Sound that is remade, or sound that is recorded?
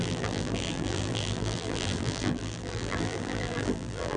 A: remade